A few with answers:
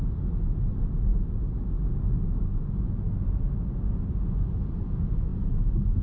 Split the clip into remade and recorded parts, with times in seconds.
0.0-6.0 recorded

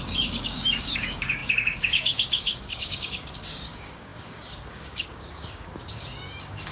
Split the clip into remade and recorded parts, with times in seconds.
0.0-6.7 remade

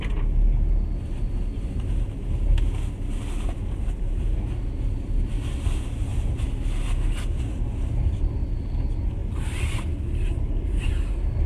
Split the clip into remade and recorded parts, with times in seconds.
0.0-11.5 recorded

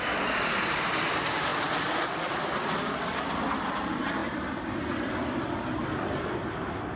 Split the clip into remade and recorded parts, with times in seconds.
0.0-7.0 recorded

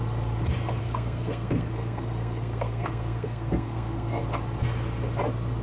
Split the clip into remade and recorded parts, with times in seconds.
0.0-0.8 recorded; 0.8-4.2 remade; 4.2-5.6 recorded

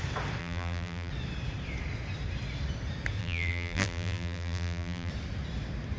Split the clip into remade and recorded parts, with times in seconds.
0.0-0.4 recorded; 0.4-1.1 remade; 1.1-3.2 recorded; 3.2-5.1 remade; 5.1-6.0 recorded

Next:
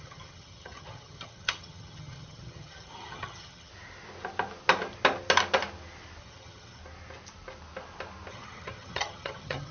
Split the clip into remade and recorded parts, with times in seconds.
0.0-3.7 remade; 3.7-6.2 recorded; 6.2-6.8 remade; 6.8-8.3 recorded; 8.3-9.7 remade